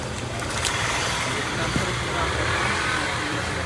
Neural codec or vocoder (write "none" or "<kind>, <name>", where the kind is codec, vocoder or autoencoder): vocoder, BigVGAN v2